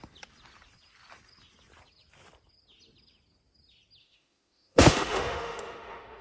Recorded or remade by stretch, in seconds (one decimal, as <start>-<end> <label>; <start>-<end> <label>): 0.0-4.0 recorded; 4.0-6.2 remade